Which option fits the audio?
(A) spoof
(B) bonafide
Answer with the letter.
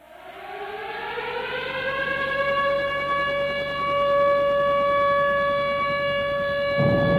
B